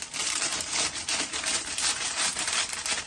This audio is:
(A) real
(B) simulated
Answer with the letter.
B